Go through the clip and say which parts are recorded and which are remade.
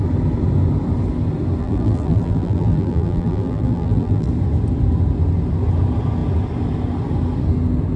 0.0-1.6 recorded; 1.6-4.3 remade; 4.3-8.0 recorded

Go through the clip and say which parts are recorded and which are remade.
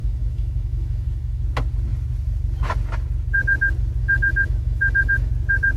0.0-1.4 remade; 1.4-4.0 recorded; 4.0-5.3 remade; 5.3-5.8 recorded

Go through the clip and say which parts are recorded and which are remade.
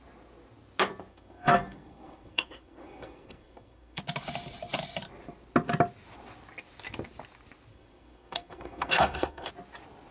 0.0-1.1 recorded; 1.1-4.0 remade; 4.0-7.7 recorded; 7.7-9.5 remade; 9.5-10.1 recorded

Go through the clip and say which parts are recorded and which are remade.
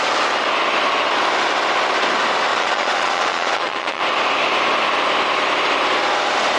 0.0-2.5 recorded; 2.5-4.0 remade; 4.0-6.6 recorded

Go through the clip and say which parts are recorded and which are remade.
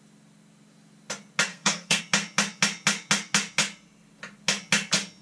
0.0-1.5 recorded; 1.5-2.0 remade; 2.0-5.2 recorded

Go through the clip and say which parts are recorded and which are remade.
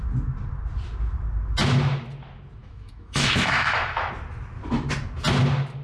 0.0-2.6 recorded; 2.6-4.1 remade; 4.1-5.8 recorded